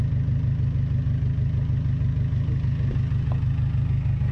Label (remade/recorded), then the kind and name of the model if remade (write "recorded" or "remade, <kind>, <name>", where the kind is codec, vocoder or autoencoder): recorded